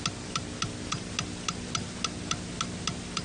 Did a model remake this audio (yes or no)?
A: no